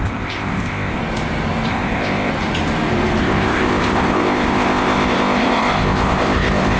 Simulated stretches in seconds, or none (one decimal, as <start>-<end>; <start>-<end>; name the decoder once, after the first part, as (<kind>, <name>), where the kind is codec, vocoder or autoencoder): 0.0-1.0 (codec, ZipCodec); 1.7-2.3; 3.2-6.8